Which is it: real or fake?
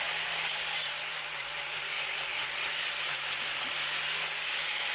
real